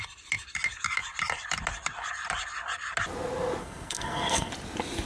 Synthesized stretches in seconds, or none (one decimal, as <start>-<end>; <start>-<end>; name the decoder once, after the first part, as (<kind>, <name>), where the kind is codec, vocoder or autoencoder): 3.6-4.5 (codec, SNAC)

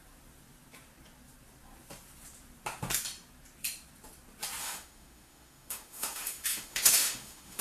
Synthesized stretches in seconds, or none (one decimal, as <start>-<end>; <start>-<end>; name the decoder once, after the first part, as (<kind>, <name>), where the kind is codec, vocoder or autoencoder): 4.6-7.6 (autoencoder, DAC-VAE)

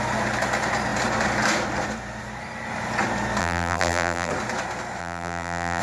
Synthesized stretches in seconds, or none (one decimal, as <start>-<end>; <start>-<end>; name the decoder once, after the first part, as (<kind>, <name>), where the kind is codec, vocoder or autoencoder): 3.4-4.3 (vocoder, BigVGAN v2); 5.0-5.8

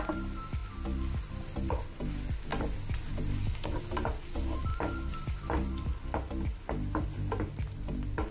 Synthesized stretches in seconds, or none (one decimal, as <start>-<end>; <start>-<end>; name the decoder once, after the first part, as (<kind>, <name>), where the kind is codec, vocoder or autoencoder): none